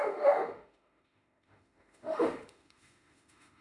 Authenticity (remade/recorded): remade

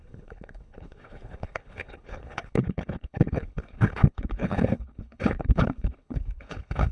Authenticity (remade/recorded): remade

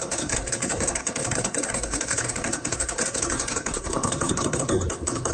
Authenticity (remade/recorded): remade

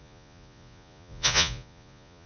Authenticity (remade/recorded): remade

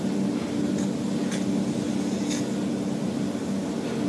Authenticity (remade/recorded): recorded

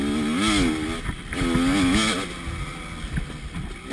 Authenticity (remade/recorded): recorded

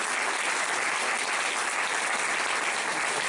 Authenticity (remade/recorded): recorded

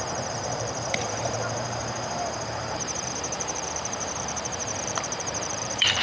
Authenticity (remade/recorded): remade